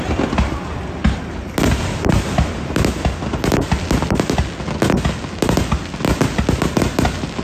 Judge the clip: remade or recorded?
recorded